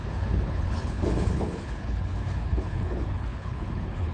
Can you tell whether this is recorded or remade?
remade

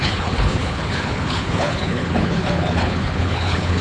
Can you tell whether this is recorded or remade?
remade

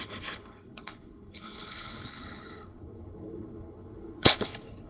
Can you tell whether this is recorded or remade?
remade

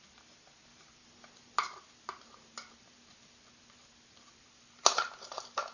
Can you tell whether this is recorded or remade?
recorded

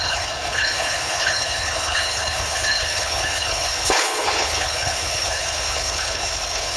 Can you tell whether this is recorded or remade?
remade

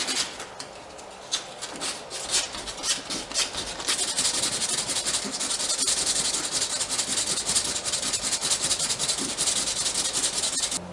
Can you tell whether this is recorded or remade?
recorded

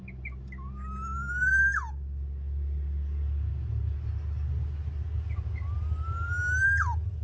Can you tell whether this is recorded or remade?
recorded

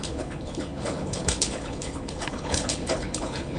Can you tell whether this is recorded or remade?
remade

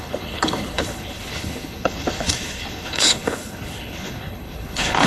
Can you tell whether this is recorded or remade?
remade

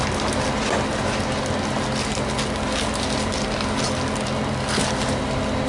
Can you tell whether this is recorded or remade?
recorded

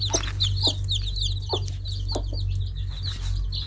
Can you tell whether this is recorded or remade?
recorded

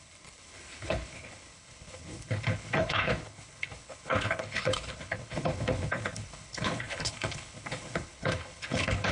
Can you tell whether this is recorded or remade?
remade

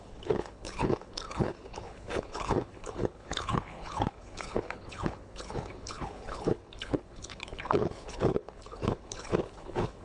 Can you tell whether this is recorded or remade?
remade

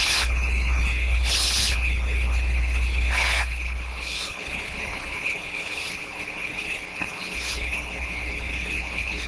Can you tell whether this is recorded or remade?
remade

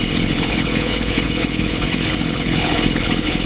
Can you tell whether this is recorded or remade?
remade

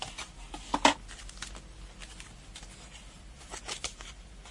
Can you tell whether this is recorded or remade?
recorded